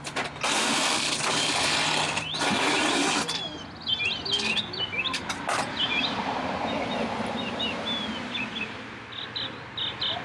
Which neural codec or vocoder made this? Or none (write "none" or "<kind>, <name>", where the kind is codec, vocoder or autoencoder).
none